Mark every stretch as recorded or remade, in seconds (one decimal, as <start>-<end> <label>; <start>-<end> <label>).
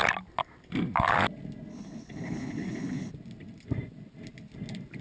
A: 0.0-1.7 recorded; 1.7-3.1 remade; 3.1-5.0 recorded